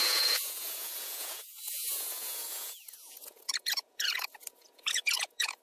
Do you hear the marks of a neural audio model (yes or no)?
yes